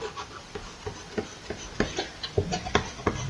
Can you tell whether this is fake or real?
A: fake